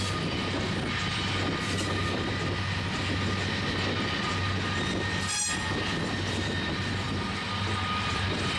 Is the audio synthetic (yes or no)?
no